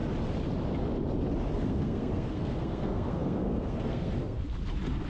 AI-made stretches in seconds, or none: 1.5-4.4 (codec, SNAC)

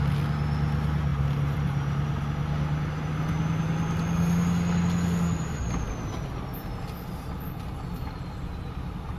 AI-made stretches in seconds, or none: 1.1-2.2 (vocoder, BigVGAN v2)

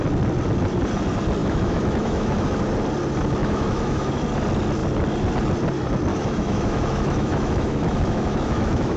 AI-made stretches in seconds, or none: 1.4-2.6 (autoencoder, DAC-VAE); 3.4-4.1; 6.1-9.0

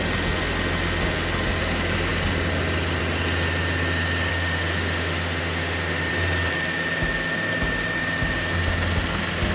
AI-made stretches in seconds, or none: 4.3-6.1 (autoencoder, DAC-VAE)

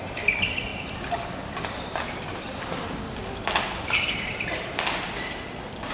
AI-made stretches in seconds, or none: 0.0-5.9 (vocoder, BigVGAN v2)

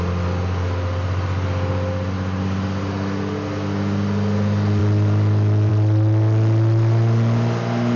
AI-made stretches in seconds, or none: none

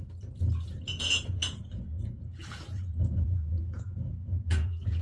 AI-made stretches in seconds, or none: 0.8-5.0 (vocoder, Vocos)

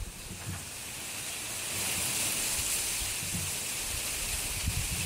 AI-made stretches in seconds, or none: none